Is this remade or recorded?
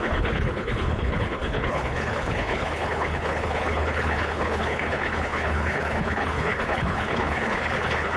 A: remade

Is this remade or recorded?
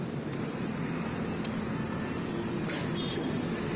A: recorded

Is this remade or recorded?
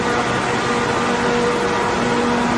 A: recorded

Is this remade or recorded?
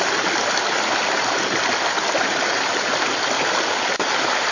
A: recorded